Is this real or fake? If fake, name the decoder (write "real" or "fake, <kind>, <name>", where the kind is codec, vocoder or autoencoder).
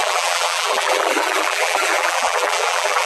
fake, vocoder, BigVGAN v2